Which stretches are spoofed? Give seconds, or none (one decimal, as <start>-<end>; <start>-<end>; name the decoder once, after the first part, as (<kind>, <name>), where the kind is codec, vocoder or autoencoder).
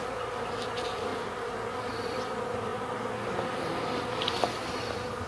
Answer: none